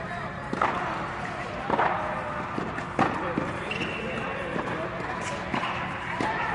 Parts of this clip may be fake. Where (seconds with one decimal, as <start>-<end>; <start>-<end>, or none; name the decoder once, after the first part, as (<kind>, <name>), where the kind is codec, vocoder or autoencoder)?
5.5-6.5 (vocoder, BigVGAN v2)